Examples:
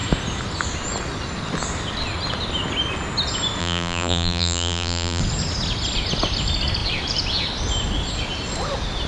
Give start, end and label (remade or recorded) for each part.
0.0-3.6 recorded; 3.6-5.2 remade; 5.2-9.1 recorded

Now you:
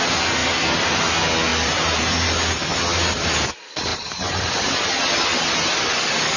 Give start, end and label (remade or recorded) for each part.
0.0-0.4 recorded; 0.4-1.0 remade; 1.0-1.5 recorded; 1.5-2.3 remade; 2.3-3.9 recorded; 3.9-4.5 remade; 4.5-6.4 recorded

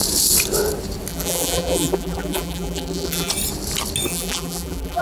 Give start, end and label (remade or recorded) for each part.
0.0-1.1 recorded; 1.1-3.3 remade; 3.3-4.1 recorded; 4.1-5.0 remade

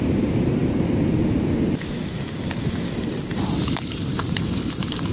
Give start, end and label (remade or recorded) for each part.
0.0-0.6 remade; 0.6-3.3 recorded; 3.3-5.1 remade

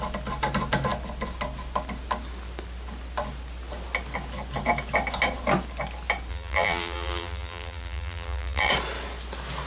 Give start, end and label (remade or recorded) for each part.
0.0-6.3 recorded; 6.3-8.7 remade; 8.7-9.7 recorded

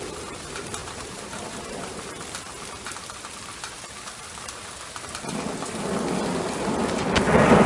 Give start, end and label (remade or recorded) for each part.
0.0-0.8 recorded; 0.8-2.0 remade; 2.0-7.7 recorded

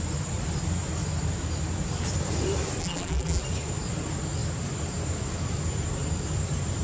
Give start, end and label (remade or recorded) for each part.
0.0-2.8 recorded; 2.8-3.4 remade; 3.4-6.8 recorded

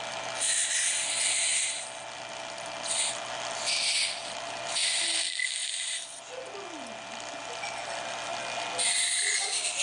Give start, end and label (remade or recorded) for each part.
0.0-0.5 recorded; 0.5-1.0 remade; 1.0-5.6 recorded; 5.6-6.2 remade; 6.2-9.8 recorded